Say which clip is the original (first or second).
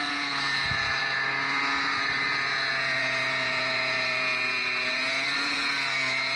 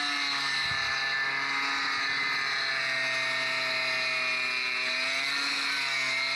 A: second